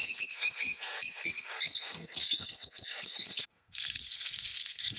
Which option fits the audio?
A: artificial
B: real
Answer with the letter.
A